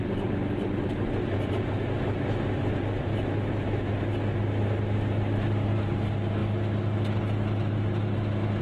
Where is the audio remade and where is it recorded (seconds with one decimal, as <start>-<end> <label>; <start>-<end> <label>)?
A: 0.0-8.6 recorded